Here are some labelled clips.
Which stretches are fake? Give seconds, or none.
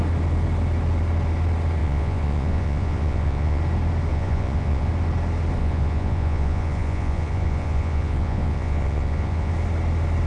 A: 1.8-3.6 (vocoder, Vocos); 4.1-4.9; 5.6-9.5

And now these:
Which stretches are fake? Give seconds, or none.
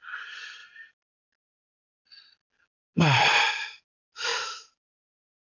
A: 4.3-4.9 (vocoder, BigVGAN v2)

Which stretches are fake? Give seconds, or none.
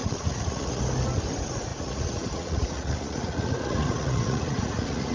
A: 0.0-0.8 (vocoder, Vocos); 1.7-5.1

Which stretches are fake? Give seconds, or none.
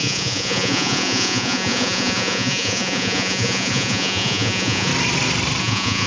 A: 0.0-4.9 (vocoder, Vocos); 5.6-6.1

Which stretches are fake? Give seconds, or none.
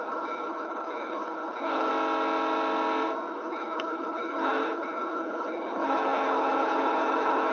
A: 0.0-1.9 (codec, HILCodec); 3.3-7.5